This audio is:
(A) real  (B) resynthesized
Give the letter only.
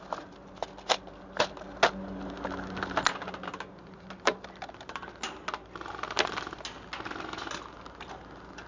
A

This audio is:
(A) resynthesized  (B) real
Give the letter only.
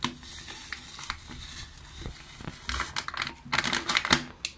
B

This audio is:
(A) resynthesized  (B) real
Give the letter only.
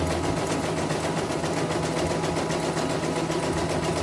B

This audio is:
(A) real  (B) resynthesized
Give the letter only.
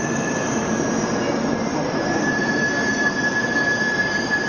A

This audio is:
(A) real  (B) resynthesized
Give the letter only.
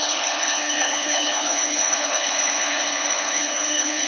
B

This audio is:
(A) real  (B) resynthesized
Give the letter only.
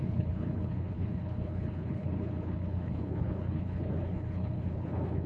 B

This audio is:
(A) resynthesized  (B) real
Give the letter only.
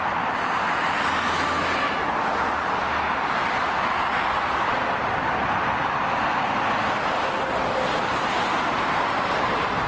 B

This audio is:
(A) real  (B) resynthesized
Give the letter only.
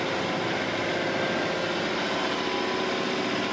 A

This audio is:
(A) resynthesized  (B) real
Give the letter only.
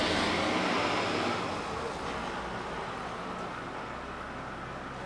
B